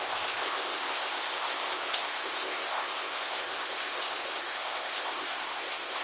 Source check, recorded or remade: remade